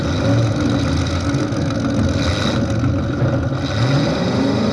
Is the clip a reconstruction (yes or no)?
no